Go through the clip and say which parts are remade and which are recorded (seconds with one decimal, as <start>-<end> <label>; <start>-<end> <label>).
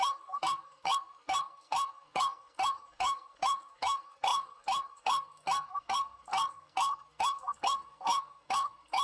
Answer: 0.0-9.0 remade